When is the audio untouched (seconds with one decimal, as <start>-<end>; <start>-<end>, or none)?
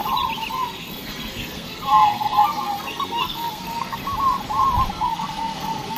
0.0-0.5; 4.0-4.9